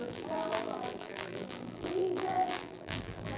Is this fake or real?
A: fake